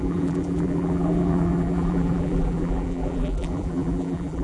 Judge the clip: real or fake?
fake